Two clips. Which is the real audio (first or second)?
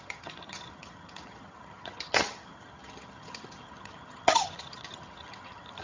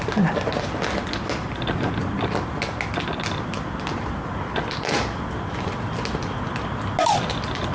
second